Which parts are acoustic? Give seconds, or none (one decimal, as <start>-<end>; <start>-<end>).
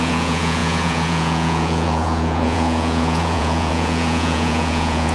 none